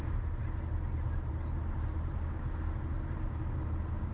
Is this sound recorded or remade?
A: recorded